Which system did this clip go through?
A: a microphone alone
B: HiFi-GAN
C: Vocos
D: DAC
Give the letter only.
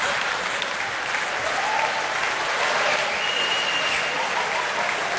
A